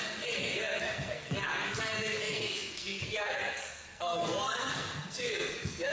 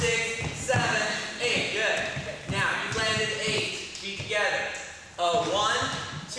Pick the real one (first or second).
second